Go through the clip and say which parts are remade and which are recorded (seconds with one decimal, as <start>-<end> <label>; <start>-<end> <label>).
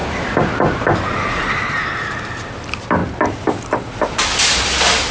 0.0-5.1 recorded